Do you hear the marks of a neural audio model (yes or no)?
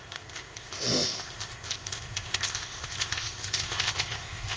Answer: yes